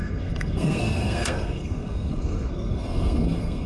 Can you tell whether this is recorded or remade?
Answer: remade